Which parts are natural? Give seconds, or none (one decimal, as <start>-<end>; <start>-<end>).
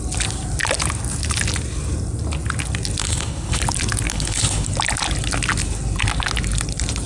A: 0.0-3.0; 3.6-4.1; 4.7-7.1